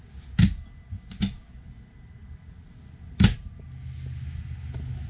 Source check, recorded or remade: recorded